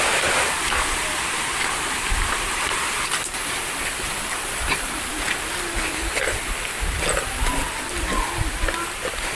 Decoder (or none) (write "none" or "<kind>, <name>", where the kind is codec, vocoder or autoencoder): vocoder, BigVGAN v2